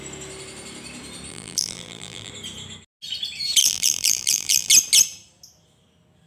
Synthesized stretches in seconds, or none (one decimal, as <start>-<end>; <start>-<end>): 1.3-2.3; 3.6-4.7

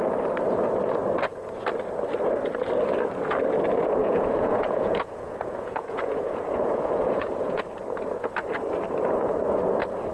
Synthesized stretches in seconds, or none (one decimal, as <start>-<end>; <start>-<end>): 4.0-7.6